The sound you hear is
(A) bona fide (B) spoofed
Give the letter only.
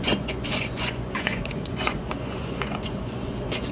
B